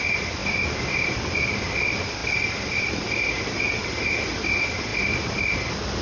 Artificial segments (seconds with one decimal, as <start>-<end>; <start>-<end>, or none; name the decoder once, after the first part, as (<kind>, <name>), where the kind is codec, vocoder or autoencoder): none